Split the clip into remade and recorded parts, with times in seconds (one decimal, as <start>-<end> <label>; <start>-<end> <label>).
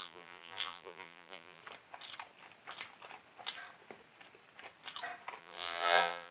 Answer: 0.0-1.6 remade; 1.6-5.4 recorded; 5.4-6.3 remade